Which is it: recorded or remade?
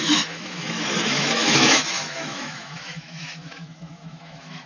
remade